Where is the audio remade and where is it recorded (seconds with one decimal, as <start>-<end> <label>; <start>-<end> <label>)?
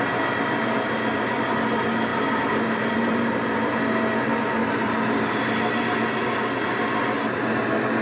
0.0-2.1 recorded; 2.1-3.8 remade; 3.8-4.6 recorded; 4.6-5.9 remade; 5.9-8.0 recorded